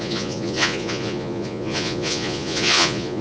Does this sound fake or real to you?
fake